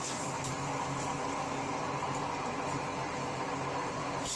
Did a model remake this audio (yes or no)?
yes